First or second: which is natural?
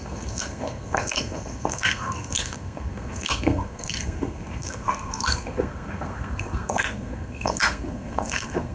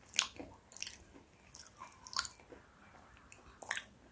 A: second